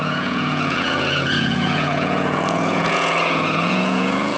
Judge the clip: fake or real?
fake